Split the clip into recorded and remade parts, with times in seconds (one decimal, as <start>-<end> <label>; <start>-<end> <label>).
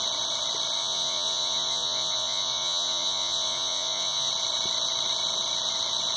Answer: 0.0-0.8 recorded; 0.8-4.3 remade; 4.3-6.2 recorded